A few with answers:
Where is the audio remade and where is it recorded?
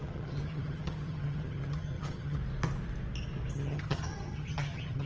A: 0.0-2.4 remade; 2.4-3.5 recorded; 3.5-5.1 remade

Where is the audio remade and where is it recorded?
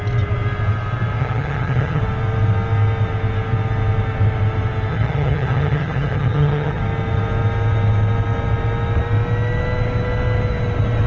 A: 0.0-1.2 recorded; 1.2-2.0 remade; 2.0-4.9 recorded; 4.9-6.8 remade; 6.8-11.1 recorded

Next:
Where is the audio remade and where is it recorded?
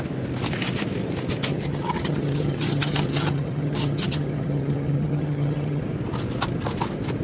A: 0.0-1.5 recorded; 1.5-5.8 remade; 5.8-7.2 recorded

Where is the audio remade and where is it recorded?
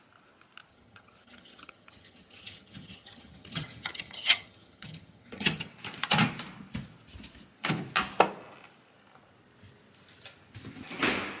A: 0.0-0.7 recorded; 0.7-5.7 remade; 5.7-11.4 recorded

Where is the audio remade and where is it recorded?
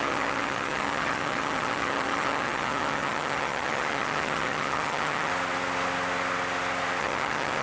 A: 0.0-5.3 remade; 5.3-7.0 recorded; 7.0-7.6 remade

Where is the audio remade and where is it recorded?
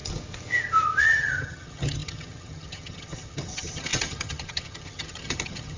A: 0.0-1.0 recorded; 1.0-5.8 remade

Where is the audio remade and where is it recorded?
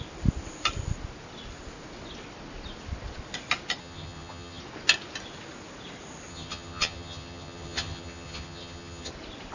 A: 0.0-3.8 recorded; 3.8-4.6 remade; 4.6-6.3 recorded; 6.3-9.1 remade; 9.1-9.5 recorded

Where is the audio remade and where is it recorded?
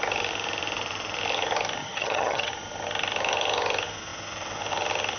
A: 0.0-1.8 recorded; 1.8-2.5 remade; 2.5-5.2 recorded